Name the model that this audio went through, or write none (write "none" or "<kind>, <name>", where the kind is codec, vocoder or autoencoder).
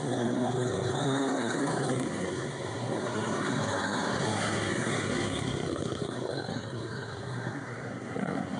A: codec, SNAC